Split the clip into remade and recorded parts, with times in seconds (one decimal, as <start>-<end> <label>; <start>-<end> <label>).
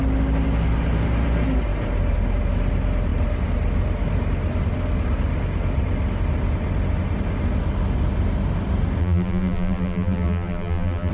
0.0-9.0 recorded; 9.0-11.1 remade